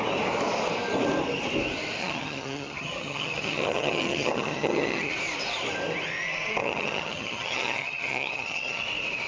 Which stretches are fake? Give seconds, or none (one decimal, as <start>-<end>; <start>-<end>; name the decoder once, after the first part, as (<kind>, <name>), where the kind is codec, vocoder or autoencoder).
2.0-5.1 (vocoder, HiFi-GAN); 6.6-8.8